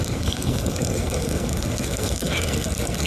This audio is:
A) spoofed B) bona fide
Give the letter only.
A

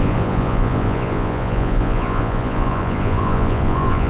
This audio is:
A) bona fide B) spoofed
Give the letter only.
B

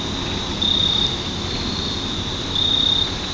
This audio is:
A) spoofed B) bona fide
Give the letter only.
B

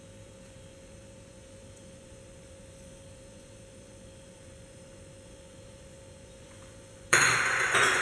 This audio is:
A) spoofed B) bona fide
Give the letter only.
A